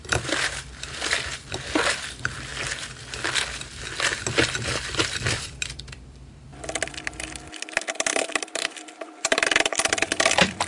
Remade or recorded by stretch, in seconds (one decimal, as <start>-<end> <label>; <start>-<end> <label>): 0.0-2.5 remade; 2.5-5.0 recorded; 5.0-6.5 remade; 6.5-7.9 recorded; 7.9-10.7 remade